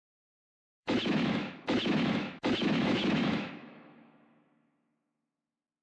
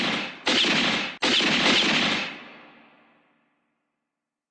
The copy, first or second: first